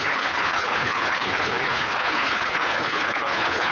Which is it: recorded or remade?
remade